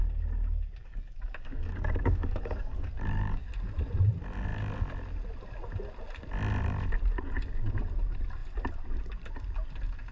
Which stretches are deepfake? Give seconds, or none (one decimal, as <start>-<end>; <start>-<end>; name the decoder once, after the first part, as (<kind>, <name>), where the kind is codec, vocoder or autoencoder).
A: 0.8-3.5 (codec, DAC)